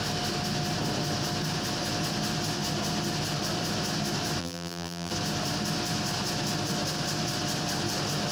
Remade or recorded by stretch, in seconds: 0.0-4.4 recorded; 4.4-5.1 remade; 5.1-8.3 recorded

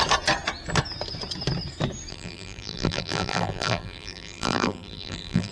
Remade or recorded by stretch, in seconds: 0.0-2.1 recorded; 2.1-5.5 remade

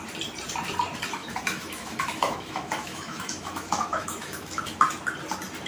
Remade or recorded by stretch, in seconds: 0.0-1.2 recorded; 1.2-4.6 remade; 4.6-5.7 recorded

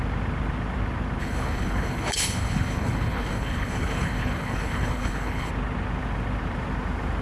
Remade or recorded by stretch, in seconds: 0.0-1.2 recorded; 1.2-5.5 remade; 5.5-7.2 recorded

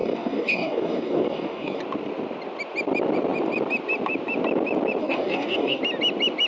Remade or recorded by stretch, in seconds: 0.0-1.8 remade; 1.8-5.0 recorded; 5.0-5.8 remade; 5.8-6.5 recorded

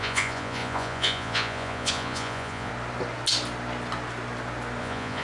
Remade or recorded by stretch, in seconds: 0.0-2.7 remade; 2.7-4.8 recorded; 4.8-5.2 remade

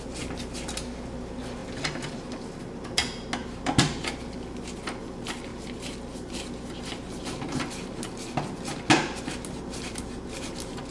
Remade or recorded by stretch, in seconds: 0.0-3.4 recorded; 3.4-4.1 remade; 4.1-5.5 recorded; 5.5-7.2 remade; 7.2-10.9 recorded

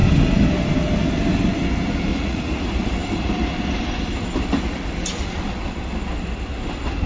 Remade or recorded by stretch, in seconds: 0.0-2.1 recorded; 2.1-2.6 remade; 2.6-7.1 recorded